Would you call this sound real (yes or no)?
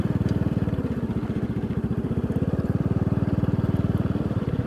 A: no